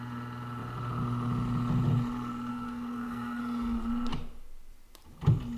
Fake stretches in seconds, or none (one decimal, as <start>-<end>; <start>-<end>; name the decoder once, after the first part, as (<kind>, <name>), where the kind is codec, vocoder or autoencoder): 2.5-3.4 (codec, SNAC)